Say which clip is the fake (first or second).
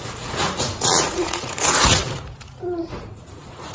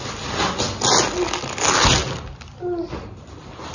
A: first